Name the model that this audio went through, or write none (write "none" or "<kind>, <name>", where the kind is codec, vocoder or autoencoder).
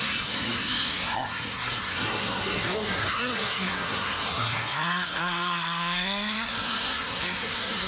codec, SNAC